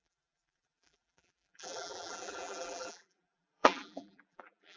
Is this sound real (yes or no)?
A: no